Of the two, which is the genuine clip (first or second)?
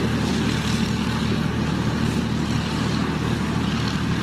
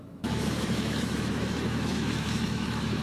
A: first